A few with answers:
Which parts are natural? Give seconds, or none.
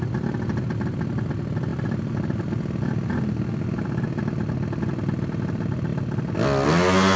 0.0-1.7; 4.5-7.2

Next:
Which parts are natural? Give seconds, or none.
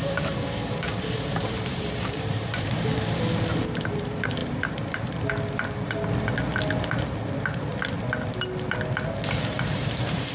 2.9-3.5; 4.4-6.8; 7.7-9.3